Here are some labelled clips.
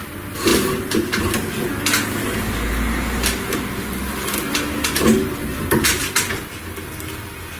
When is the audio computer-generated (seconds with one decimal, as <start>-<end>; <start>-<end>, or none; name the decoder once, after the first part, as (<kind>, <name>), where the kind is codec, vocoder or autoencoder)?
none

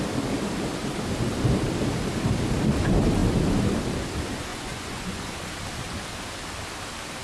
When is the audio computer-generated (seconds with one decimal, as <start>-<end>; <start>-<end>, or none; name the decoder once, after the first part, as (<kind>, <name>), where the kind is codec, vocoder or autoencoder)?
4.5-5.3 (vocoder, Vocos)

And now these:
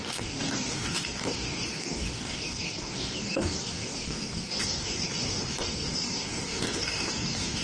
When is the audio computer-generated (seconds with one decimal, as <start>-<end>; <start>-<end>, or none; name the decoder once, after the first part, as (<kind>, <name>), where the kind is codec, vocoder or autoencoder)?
0.0-7.6 (codec, DAC)

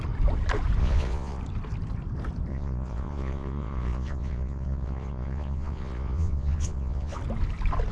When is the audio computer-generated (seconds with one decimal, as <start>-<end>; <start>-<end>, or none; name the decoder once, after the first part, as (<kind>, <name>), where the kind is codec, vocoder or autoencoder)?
0.8-1.4 (vocoder, Vocos); 2.5-7.2

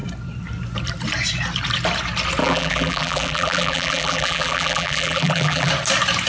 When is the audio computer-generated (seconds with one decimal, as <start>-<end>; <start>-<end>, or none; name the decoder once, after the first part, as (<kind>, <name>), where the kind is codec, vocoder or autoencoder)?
2.4-5.7 (vocoder, BigVGAN v2)